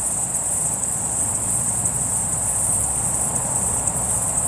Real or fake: fake